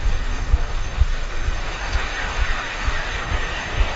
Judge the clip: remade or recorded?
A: remade